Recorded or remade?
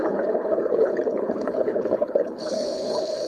remade